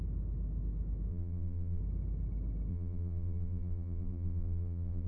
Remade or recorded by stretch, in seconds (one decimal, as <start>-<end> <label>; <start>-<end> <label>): 0.0-1.1 recorded; 1.1-1.8 remade; 1.8-2.7 recorded; 2.7-5.1 remade